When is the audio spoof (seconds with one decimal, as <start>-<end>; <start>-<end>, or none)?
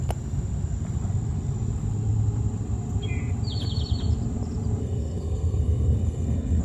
4.8-6.6